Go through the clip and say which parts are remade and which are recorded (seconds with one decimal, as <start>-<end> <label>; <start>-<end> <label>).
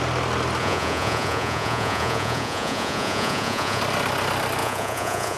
0.0-0.6 recorded; 0.6-3.8 remade; 3.8-4.6 recorded; 4.6-5.4 remade